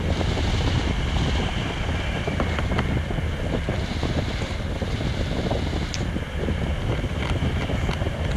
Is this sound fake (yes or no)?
no